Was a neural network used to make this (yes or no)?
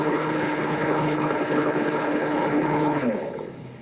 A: yes